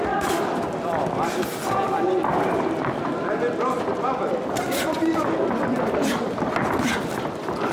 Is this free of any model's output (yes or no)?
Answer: yes